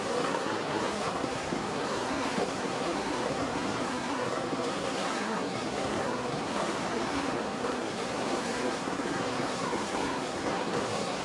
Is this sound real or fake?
fake